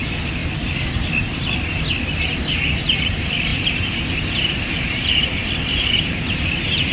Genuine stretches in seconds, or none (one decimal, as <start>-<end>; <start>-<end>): 0.4-2.8; 5.4-6.0